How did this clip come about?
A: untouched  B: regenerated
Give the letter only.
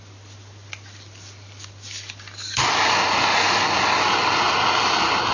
A